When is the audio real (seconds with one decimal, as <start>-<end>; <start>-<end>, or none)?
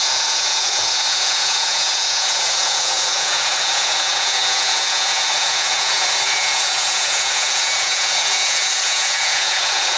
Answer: none